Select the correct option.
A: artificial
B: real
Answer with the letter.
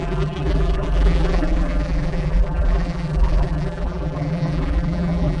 A